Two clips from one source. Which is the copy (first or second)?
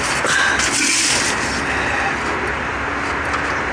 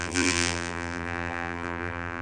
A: second